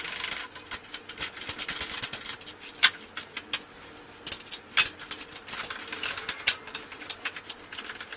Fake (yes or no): no